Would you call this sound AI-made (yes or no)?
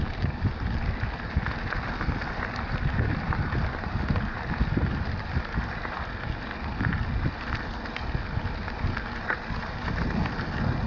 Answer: no